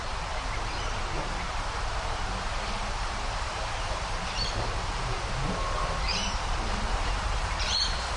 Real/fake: fake